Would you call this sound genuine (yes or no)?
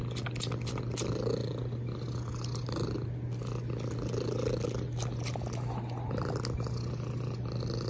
yes